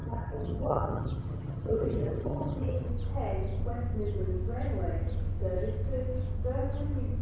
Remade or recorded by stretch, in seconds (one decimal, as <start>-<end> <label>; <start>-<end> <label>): 0.0-2.9 remade; 2.9-7.2 recorded

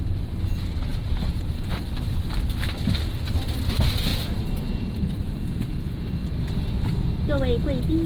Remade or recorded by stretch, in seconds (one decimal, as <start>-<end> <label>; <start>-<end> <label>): 0.0-0.9 recorded; 0.9-1.8 remade; 1.8-4.1 recorded; 4.1-6.0 remade; 6.0-8.1 recorded

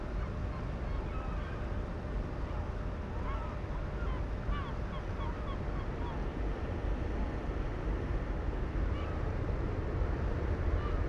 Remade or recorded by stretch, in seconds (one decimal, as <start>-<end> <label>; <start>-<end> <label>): 0.0-7.7 recorded; 7.7-8.2 remade; 8.2-11.1 recorded

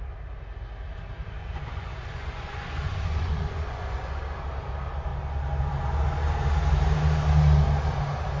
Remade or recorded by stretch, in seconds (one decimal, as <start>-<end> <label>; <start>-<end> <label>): 0.0-1.4 recorded; 1.4-4.2 remade; 4.2-8.4 recorded

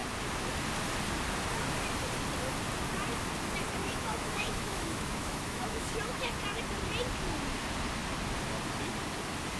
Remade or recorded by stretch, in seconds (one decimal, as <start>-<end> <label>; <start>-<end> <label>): 0.0-3.8 recorded; 3.8-6.0 remade; 6.0-9.6 recorded

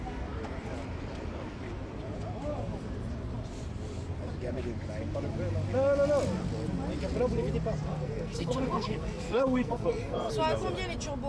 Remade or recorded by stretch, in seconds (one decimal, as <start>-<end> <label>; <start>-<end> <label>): 0.0-7.9 recorded; 7.9-10.3 remade; 10.3-11.3 recorded

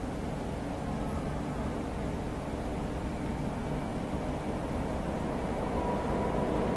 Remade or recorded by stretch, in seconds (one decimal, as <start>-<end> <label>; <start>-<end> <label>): 0.0-2.7 recorded; 2.7-3.4 remade; 3.4-3.9 recorded; 3.9-4.9 remade; 4.9-6.8 recorded

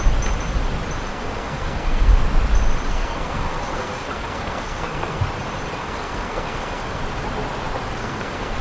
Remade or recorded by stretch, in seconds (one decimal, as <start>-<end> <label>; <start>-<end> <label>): 0.0-1.1 recorded; 1.1-2.1 remade; 2.1-2.9 recorded; 2.9-5.2 remade; 5.2-5.8 recorded; 5.8-7.0 remade; 7.0-8.0 recorded; 8.0-8.6 remade